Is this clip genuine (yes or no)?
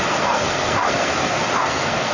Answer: no